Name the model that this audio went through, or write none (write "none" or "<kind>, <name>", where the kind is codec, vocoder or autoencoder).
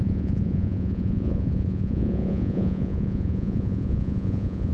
vocoder, Vocos